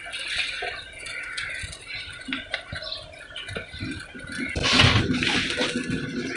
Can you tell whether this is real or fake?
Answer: real